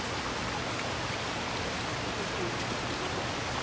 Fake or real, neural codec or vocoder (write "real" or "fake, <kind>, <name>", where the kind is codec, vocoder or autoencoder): real